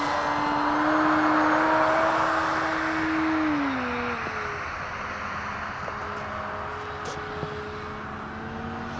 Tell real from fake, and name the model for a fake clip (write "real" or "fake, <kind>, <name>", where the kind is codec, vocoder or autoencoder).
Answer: real